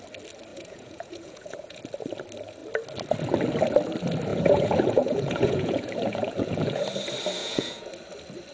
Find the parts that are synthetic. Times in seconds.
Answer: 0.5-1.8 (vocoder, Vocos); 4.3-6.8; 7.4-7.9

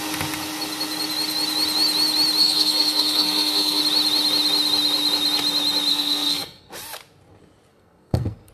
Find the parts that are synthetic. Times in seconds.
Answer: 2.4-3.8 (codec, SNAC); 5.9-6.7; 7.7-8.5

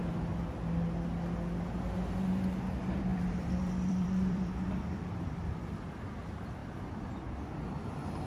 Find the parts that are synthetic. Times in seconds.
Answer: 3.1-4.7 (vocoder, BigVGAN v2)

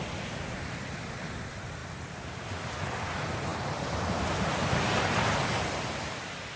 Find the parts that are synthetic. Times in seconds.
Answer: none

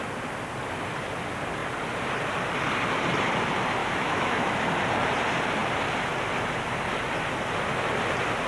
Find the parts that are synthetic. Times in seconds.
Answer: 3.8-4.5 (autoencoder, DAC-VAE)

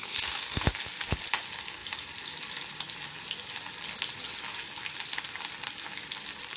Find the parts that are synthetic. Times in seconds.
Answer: 0.0-0.8 (codec, SNAC)